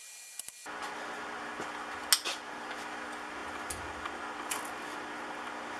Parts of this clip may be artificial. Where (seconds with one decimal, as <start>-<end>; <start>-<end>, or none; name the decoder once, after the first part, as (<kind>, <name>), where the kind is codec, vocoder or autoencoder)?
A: none